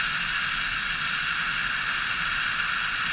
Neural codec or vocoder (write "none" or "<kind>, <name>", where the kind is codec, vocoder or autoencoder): none